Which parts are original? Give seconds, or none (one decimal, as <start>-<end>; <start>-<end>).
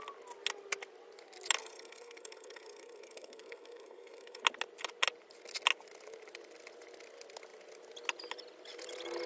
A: 0.0-1.6; 4.4-9.3